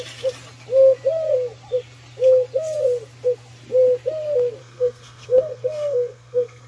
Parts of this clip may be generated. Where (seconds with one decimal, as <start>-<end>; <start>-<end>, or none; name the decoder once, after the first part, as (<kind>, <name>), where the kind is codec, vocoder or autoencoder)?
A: 4.6-6.7 (codec, SNAC)